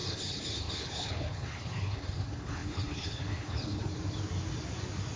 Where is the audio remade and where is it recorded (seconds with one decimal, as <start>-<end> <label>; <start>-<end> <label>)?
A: 0.0-3.9 remade; 3.9-5.2 recorded